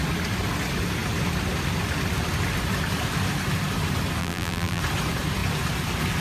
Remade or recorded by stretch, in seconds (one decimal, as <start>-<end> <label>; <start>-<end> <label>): 0.0-4.2 recorded; 4.2-4.8 remade; 4.8-6.2 recorded